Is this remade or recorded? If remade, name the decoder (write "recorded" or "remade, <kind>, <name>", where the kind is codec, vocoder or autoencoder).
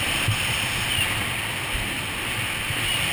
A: recorded